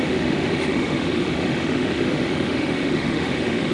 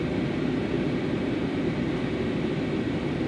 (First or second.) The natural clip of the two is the second